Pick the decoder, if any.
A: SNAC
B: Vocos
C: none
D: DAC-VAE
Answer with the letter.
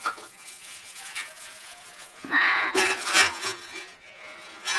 B